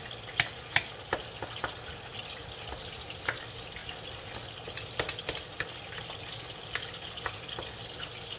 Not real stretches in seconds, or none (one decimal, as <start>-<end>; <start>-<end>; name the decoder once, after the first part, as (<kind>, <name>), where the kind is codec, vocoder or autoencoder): none